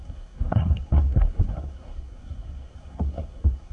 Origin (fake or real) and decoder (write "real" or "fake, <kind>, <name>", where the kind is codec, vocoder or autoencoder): fake, codec, SNAC